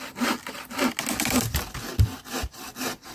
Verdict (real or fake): real